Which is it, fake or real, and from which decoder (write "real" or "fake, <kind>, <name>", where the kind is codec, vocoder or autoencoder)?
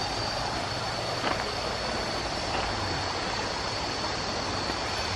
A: real